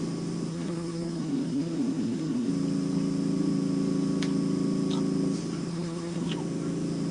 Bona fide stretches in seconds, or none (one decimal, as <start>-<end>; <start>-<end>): 0.0-0.5; 2.5-5.7; 6.3-7.1